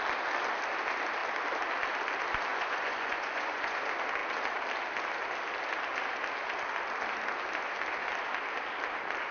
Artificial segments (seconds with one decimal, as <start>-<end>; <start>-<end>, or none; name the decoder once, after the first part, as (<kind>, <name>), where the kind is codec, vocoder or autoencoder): 2.5-3.8 (vocoder, Vocos)